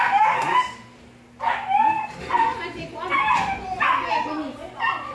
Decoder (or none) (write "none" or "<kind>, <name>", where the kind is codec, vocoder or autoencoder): none